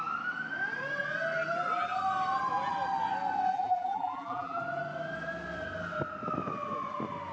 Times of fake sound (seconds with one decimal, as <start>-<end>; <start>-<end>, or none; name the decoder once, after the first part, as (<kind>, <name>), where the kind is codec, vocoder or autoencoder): 3.5-4.6 (vocoder, BigVGAN v2)